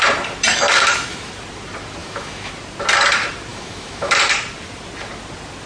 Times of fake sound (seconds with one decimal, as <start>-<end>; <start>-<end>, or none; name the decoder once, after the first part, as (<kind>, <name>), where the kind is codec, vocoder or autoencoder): 0.5-1.3 (autoencoder, DAC-VAE); 2.0-2.5; 3.5-4.1